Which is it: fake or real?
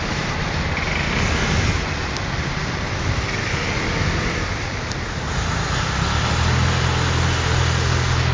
real